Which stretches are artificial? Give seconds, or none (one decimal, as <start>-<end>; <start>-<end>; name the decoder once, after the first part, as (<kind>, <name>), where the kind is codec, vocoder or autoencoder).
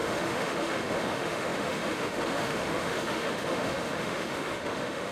0.0-5.1 (autoencoder, DAC-VAE)